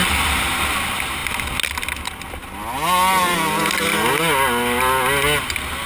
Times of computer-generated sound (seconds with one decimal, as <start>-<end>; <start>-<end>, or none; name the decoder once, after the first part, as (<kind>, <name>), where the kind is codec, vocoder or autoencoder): none